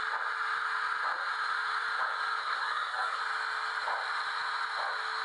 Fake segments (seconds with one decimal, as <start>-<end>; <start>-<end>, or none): 2.4-3.2